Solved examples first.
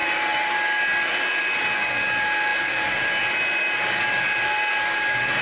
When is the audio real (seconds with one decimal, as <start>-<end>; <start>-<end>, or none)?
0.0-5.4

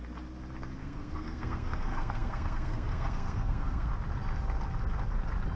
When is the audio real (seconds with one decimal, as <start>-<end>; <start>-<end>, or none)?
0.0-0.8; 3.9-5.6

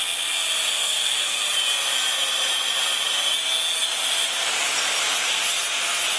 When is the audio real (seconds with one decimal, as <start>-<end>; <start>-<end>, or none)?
0.0-0.7; 1.4-6.2

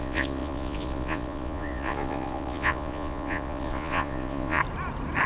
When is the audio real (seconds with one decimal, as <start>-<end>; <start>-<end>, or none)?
4.6-5.3